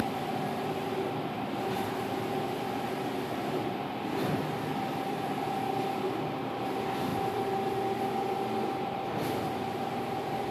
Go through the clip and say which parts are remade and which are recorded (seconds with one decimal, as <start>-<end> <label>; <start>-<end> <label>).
0.0-10.5 recorded